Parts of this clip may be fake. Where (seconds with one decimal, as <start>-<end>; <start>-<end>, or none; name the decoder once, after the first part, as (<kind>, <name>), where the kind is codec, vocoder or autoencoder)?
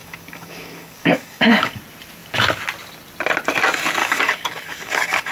0.0-1.8 (codec, DAC); 4.0-5.3